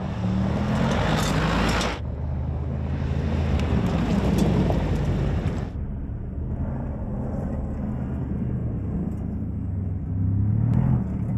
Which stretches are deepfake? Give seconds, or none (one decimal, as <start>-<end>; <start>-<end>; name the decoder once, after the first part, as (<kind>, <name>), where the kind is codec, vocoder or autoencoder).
4.1-7.5 (vocoder, BigVGAN v2)